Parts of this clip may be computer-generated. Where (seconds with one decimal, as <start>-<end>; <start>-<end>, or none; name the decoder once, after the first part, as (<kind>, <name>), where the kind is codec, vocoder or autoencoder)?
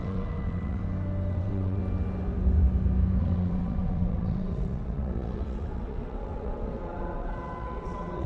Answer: 0.0-0.8 (vocoder, WaveNeXt); 1.3-1.8; 3.2-8.3